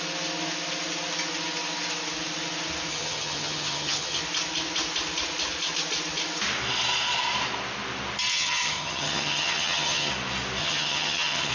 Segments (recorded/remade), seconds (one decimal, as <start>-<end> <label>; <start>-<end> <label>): 0.0-2.9 recorded; 2.9-4.2 remade; 4.2-8.3 recorded; 8.3-10.1 remade; 10.1-10.6 recorded; 10.6-11.5 remade